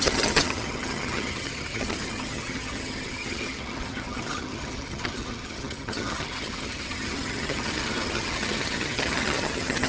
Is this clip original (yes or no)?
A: no